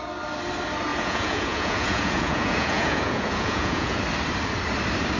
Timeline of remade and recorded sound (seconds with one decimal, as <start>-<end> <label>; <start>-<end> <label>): 0.0-0.9 recorded; 0.9-4.0 remade; 4.0-5.2 recorded